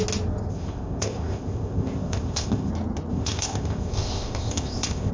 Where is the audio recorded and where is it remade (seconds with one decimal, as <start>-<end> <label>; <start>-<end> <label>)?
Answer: 0.0-0.5 recorded; 0.5-2.7 remade; 2.7-3.1 recorded; 3.1-5.1 remade